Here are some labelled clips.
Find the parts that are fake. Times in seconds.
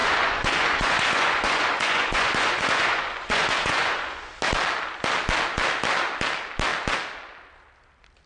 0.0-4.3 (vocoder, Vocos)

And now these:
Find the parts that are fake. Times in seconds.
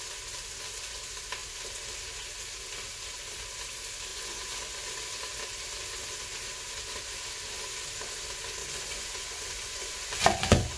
4.1-4.8 (vocoder, Vocos); 8.6-10.8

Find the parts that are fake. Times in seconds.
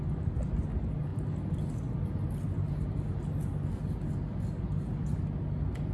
none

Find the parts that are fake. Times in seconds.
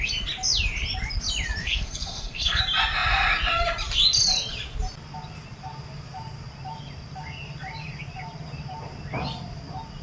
1.6-2.6 (codec, SNAC)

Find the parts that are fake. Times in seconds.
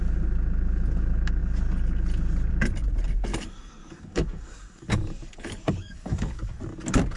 3.3-6.6 (codec, DAC)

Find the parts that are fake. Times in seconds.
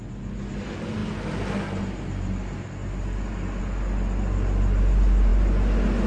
none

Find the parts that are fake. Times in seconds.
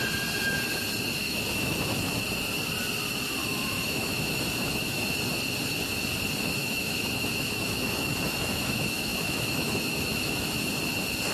1.2-2.1 (autoencoder, DAC-VAE); 3.4-5.1; 6.6-10.6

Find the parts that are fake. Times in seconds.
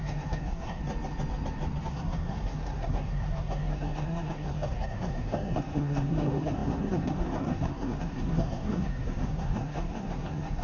0.0-0.8 (codec, SNAC); 1.9-10.6